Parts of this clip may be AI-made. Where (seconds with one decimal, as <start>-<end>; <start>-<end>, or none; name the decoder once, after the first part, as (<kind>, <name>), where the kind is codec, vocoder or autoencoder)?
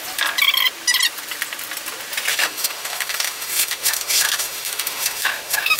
2.3-5.8 (autoencoder, DAC-VAE)